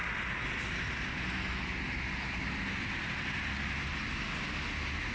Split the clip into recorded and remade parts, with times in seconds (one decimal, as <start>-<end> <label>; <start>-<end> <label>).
0.0-5.1 recorded